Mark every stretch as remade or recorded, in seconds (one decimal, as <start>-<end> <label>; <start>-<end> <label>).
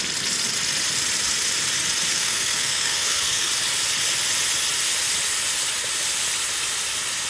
0.0-2.1 recorded; 2.1-3.5 remade; 3.5-7.3 recorded